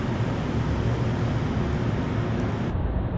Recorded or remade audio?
recorded